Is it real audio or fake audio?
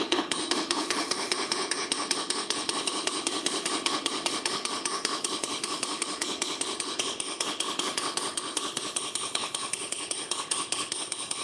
fake